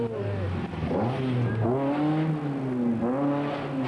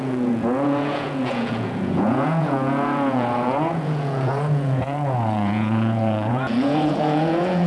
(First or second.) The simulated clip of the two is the second